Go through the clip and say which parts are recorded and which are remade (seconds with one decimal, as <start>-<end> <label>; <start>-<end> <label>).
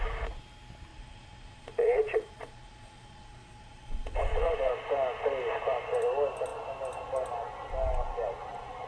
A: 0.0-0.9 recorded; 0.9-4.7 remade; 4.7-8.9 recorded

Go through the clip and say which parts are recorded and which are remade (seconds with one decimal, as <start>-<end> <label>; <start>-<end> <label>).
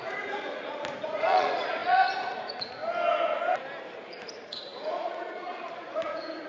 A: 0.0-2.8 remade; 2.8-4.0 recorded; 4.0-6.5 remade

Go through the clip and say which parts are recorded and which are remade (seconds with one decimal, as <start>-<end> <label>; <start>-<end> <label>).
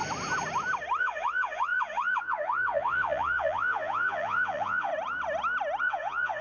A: 0.0-1.0 recorded; 1.0-4.9 remade; 4.9-5.8 recorded; 5.8-6.4 remade